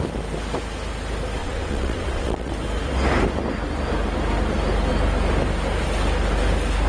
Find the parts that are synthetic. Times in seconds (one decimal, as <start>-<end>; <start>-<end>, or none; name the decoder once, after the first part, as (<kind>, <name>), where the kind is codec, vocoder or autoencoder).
1.4-2.5 (vocoder, WaveNeXt)